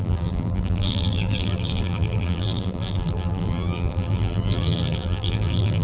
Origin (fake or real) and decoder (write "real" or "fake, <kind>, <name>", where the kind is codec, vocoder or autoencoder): fake, vocoder, BigVGAN v2